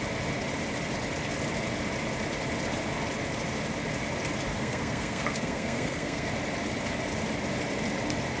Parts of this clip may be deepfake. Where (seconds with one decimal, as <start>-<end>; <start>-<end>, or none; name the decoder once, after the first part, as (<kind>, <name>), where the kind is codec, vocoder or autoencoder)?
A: 4.5-6.3 (codec, SNAC)